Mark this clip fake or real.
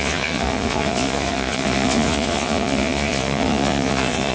fake